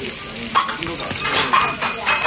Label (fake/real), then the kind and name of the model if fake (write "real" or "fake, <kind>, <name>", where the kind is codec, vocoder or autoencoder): real